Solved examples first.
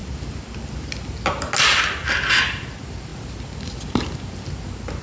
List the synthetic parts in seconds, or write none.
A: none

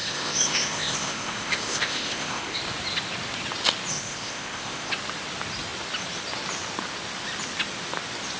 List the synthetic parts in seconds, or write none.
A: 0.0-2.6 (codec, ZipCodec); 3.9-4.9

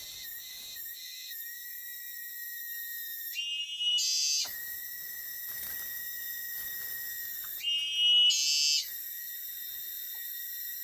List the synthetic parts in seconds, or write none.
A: none